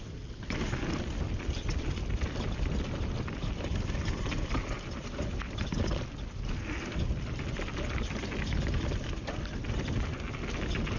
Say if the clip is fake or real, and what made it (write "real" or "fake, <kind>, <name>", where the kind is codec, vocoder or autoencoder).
real